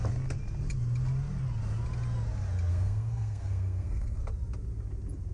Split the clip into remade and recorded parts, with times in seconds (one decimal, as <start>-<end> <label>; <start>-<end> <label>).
0.0-2.7 recorded; 2.7-4.2 remade; 4.2-5.3 recorded